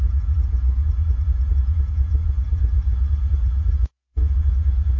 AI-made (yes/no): yes